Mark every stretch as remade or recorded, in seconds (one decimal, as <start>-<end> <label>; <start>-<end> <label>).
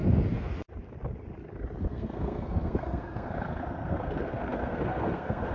0.0-1.8 recorded; 1.8-5.5 remade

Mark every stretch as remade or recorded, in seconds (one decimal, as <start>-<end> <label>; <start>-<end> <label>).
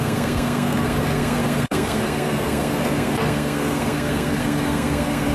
0.0-5.3 remade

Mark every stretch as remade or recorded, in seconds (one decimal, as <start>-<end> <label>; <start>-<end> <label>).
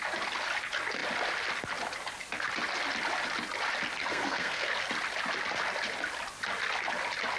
0.0-4.1 recorded; 4.1-4.7 remade; 4.7-7.4 recorded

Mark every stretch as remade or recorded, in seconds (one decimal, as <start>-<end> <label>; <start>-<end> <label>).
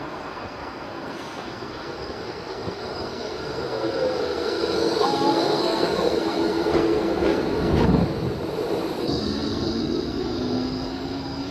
0.0-8.0 remade; 8.0-9.0 recorded; 9.0-11.5 remade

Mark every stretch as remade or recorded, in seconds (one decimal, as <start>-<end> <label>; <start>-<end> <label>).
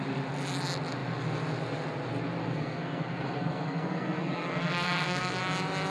0.0-2.4 recorded; 2.4-5.4 remade; 5.4-5.9 recorded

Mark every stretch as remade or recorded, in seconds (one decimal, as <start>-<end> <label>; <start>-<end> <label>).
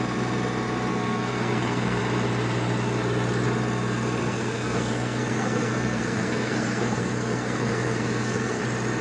0.0-0.9 recorded; 0.9-2.0 remade; 2.0-4.2 recorded; 4.2-8.6 remade; 8.6-9.0 recorded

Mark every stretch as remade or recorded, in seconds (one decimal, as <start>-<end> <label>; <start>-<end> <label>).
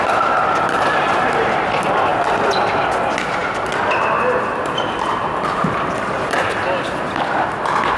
0.0-8.0 recorded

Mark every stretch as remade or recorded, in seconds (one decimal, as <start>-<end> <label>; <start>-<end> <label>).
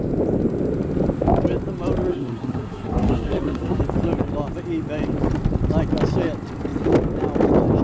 0.0-2.1 recorded; 2.1-3.8 remade; 3.8-7.8 recorded